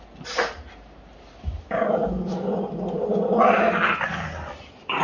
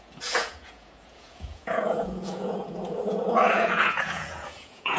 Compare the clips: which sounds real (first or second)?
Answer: first